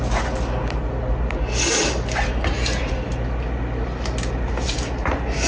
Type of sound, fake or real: real